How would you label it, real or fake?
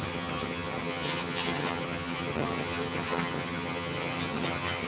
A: fake